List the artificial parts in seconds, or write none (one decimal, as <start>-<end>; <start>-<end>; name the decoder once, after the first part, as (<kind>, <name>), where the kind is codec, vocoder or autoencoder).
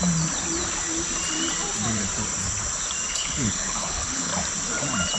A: 3.1-4.3 (codec, HILCodec)